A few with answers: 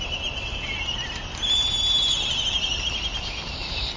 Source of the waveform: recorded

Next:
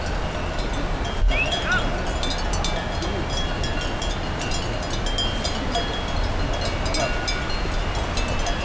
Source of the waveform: recorded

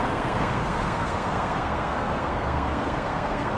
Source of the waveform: remade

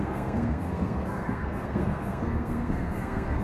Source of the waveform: remade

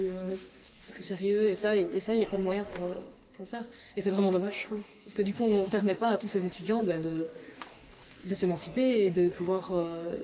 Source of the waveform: remade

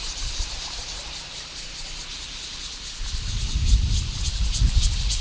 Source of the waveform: recorded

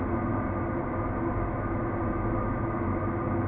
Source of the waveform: recorded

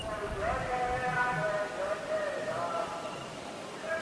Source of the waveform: recorded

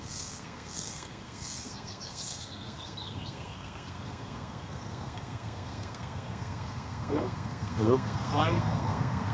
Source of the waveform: remade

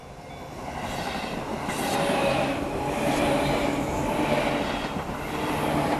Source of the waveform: recorded